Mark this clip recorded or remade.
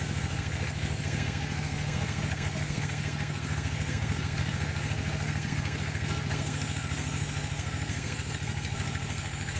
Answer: remade